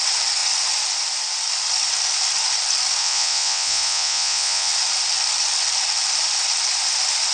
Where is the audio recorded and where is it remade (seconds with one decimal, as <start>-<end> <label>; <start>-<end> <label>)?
0.0-3.0 recorded; 3.0-4.7 remade; 4.7-7.3 recorded